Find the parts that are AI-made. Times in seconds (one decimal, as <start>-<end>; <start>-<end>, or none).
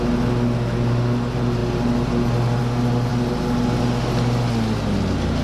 none